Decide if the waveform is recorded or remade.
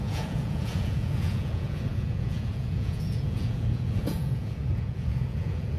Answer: remade